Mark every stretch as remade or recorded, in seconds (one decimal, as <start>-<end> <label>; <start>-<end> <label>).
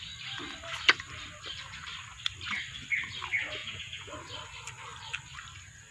0.0-3.6 recorded; 3.6-4.1 remade; 4.1-5.9 recorded